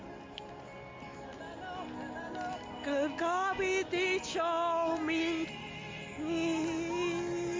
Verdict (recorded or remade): recorded